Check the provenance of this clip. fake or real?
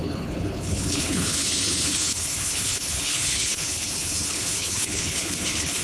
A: fake